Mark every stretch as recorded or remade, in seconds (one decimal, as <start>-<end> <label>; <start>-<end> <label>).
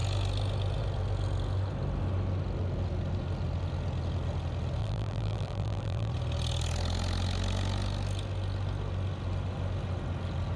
0.0-4.8 recorded; 4.8-6.1 remade; 6.1-10.6 recorded